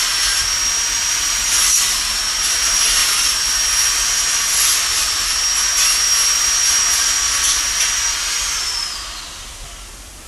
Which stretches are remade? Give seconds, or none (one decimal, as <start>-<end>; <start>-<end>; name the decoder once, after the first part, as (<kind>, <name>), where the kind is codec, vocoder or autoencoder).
none